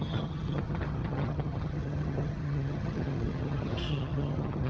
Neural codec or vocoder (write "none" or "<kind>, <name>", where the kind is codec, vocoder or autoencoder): vocoder, HiFi-GAN